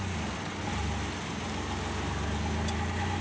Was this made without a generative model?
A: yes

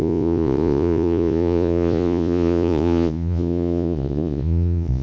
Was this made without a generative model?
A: no